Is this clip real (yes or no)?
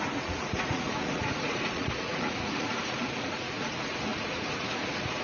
no